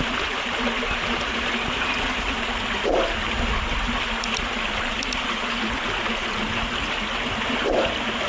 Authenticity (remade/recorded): recorded